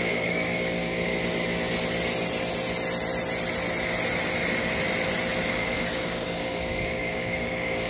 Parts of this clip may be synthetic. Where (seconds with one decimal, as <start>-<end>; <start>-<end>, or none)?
0.0-1.1; 5.5-7.9